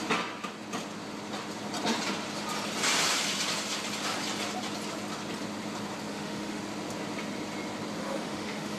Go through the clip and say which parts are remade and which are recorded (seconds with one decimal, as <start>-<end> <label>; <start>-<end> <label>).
0.0-6.1 recorded; 6.1-6.6 remade; 6.6-8.0 recorded; 8.0-8.8 remade